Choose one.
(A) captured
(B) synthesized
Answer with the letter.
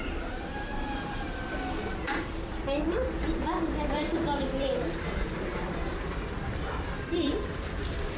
B